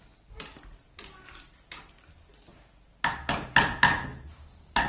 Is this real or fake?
real